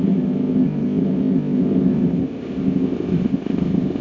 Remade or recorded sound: remade